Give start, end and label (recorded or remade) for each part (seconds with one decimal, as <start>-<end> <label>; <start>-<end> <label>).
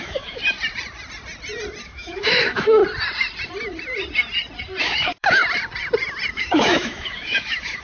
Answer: 0.0-0.4 remade; 0.4-1.8 recorded; 1.8-2.8 remade; 2.8-4.8 recorded; 4.8-5.4 remade; 5.4-6.3 recorded; 6.3-7.8 remade